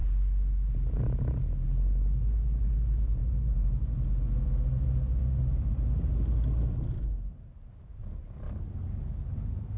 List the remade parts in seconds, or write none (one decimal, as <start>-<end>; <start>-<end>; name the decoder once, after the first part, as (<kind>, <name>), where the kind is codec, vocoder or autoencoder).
none